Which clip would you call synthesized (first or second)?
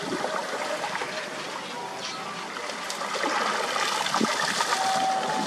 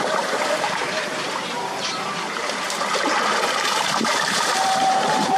second